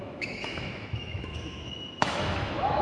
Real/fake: fake